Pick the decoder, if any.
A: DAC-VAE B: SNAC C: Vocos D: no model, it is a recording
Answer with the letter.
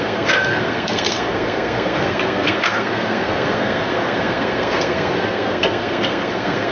B